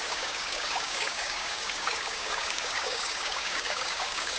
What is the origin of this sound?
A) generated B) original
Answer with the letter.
A